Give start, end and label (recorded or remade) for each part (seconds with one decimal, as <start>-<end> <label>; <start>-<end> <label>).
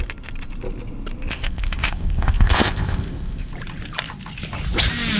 0.0-1.3 recorded; 1.3-3.5 remade; 3.5-5.2 recorded